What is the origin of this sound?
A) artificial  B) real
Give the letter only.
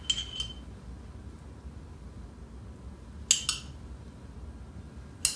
B